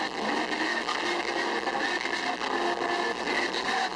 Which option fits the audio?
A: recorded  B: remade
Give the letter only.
A